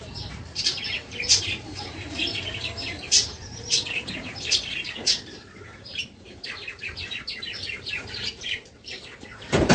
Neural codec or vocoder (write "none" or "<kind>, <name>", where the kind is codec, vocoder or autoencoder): vocoder, BigVGAN v2